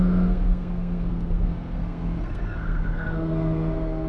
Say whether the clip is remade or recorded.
remade